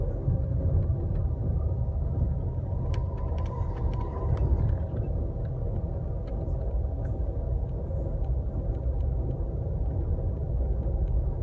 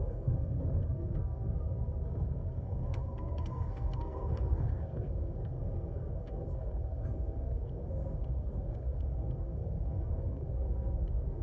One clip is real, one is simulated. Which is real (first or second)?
first